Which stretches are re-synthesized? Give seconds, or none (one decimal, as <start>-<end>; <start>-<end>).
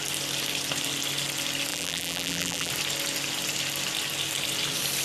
1.7-2.7